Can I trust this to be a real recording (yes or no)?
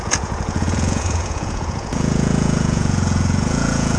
no